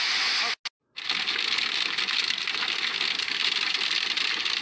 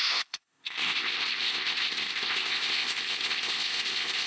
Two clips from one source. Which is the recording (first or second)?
first